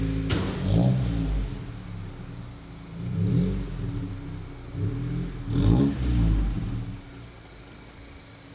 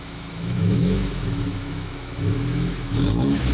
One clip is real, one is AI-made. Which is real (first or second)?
first